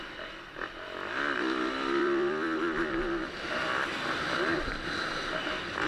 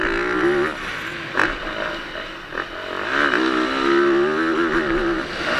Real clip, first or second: second